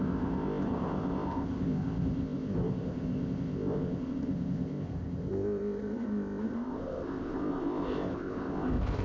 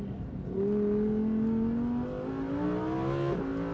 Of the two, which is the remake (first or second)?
first